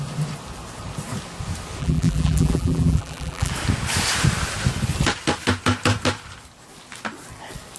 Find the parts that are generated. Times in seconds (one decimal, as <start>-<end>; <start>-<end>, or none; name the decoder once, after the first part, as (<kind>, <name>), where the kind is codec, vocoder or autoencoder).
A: 1.8-3.5 (vocoder, BigVGAN v2)